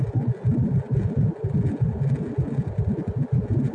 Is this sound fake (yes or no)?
no